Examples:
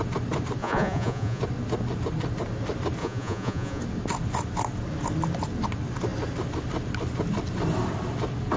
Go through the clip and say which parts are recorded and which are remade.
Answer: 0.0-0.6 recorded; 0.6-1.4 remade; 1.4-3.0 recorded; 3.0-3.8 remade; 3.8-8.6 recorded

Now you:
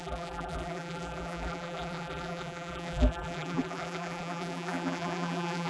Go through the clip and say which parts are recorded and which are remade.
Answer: 0.0-5.7 remade

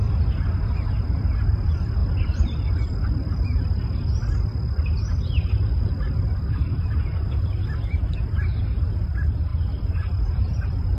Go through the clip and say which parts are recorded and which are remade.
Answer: 0.0-2.0 recorded; 2.0-3.1 remade; 3.1-9.5 recorded; 9.5-11.0 remade

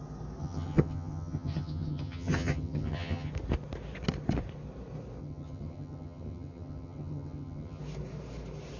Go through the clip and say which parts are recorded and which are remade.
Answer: 0.0-0.4 recorded; 0.4-3.3 remade; 3.3-5.2 recorded; 5.2-7.8 remade; 7.8-8.8 recorded

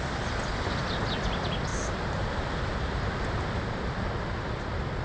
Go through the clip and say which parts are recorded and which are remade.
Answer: 0.0-1.7 recorded; 1.7-2.3 remade; 2.3-2.7 recorded; 2.7-3.9 remade; 3.9-5.0 recorded

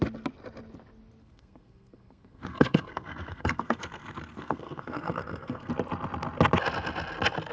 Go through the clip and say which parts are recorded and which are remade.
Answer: 0.0-1.2 recorded; 1.2-5.7 remade; 5.7-7.5 recorded

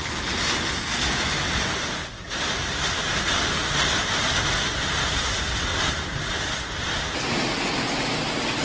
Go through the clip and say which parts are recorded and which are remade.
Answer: 0.0-5.7 recorded; 5.7-6.3 remade; 6.3-8.6 recorded